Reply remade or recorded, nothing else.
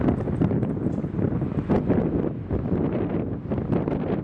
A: recorded